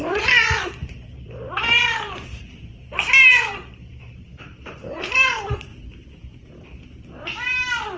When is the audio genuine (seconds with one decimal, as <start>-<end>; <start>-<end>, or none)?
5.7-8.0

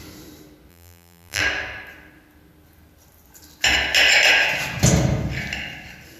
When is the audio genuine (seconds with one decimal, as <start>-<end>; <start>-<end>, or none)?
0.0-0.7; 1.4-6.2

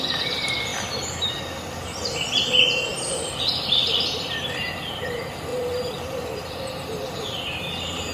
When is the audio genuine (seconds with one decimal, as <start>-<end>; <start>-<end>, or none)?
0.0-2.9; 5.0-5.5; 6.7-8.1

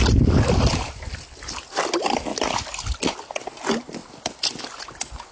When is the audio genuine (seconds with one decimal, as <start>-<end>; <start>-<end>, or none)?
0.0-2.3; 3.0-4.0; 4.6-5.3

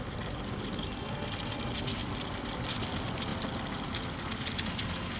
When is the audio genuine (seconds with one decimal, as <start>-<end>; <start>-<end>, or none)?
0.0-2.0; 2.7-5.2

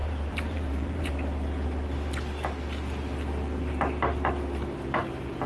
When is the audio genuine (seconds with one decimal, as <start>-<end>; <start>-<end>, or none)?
1.1-5.5

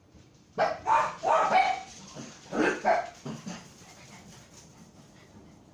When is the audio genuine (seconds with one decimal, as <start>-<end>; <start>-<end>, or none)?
1.9-5.3